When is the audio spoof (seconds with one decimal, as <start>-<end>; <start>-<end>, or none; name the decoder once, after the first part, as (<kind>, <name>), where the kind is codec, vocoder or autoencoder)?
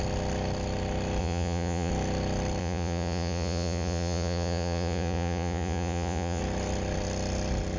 1.2-1.9 (vocoder, Vocos); 2.6-6.4